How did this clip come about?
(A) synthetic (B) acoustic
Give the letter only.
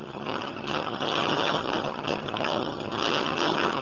A